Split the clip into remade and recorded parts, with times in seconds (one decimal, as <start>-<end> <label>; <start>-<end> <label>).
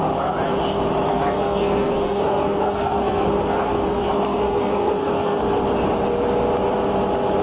0.0-1.1 recorded; 1.1-5.4 remade; 5.4-7.4 recorded